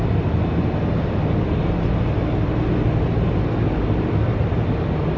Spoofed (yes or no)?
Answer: no